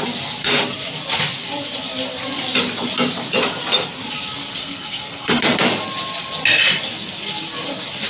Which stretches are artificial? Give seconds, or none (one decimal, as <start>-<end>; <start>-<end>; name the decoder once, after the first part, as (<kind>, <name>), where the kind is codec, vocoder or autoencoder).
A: 4.6-5.4 (codec, SNAC)

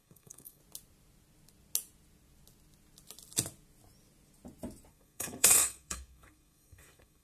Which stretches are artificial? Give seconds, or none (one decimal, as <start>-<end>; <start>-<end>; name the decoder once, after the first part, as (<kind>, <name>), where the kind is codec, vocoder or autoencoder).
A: 0.0-0.6 (codec, SNAC); 4.9-7.2

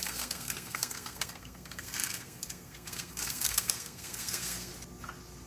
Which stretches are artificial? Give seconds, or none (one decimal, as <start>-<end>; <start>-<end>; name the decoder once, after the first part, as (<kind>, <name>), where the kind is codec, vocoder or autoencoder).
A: 0.0-4.7 (codec, SNAC)

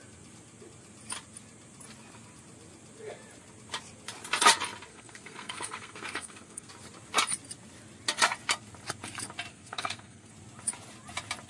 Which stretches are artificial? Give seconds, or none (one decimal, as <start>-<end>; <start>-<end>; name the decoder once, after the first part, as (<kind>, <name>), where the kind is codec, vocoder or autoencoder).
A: 4.9-6.7 (codec, SNAC); 9.5-10.3

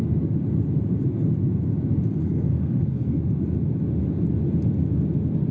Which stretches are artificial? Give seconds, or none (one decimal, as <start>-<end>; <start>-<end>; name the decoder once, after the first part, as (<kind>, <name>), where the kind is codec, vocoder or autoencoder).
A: 2.2-3.2 (codec, SNAC)